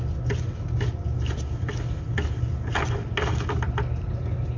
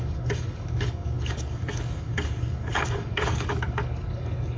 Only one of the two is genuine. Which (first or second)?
first